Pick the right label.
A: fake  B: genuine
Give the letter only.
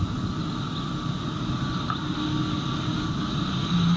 B